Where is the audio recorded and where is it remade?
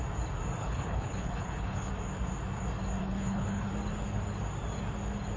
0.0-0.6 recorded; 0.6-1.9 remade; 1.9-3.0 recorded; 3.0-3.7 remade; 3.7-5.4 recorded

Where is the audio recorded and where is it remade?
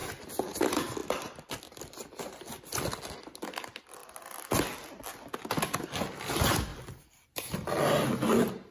0.0-8.7 recorded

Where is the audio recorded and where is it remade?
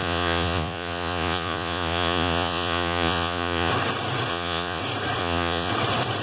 0.0-3.7 remade; 3.7-4.3 recorded; 4.3-4.8 remade; 4.8-5.2 recorded; 5.2-5.7 remade; 5.7-6.2 recorded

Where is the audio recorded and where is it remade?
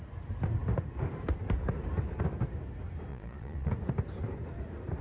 0.0-3.1 recorded; 3.1-3.7 remade; 3.7-5.0 recorded